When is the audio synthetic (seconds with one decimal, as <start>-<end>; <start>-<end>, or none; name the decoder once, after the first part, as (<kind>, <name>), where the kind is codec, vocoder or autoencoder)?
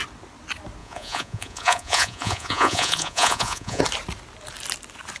0.8-3.8 (vocoder, Vocos)